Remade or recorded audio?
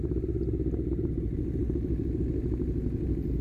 recorded